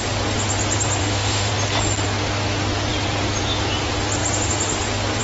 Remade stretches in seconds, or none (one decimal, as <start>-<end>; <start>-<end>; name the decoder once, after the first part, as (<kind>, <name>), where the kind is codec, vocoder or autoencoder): 1.0-1.5 (autoencoder, DAC-VAE)